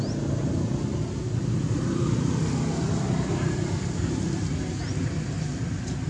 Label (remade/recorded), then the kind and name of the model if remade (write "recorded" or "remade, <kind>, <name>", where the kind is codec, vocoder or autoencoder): recorded